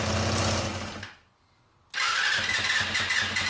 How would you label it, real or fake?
real